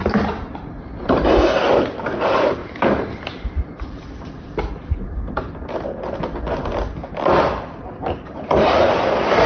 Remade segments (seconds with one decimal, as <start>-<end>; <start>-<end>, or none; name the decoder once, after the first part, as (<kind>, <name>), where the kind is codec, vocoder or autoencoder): 2.6-4.7 (vocoder, BigVGAN v2)